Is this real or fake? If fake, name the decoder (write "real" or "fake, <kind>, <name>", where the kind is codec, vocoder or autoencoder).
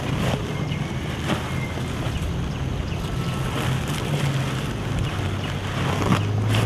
real